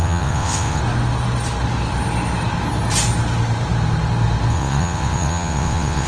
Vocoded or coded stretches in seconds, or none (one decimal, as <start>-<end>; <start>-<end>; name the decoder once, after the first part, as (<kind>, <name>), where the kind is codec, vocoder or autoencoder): 0.0-0.8 (vocoder, WaveNeXt); 4.5-6.1